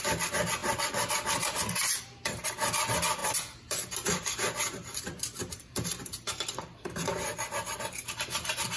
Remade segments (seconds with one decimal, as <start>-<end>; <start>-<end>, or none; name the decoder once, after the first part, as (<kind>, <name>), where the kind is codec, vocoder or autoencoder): 3.2-8.0 (vocoder, BigVGAN v2)